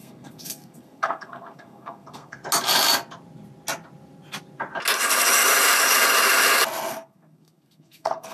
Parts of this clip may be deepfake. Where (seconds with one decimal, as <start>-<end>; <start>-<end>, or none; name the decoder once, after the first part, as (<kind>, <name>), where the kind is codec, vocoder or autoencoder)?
0.0-2.4 (codec, SNAC); 6.9-8.3